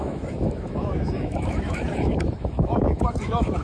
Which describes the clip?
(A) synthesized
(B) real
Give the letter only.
A